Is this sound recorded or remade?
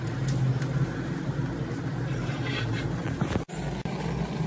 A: recorded